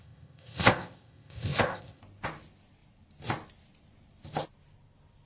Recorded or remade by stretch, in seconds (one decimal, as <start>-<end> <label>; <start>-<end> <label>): 0.0-2.0 remade; 2.0-5.3 recorded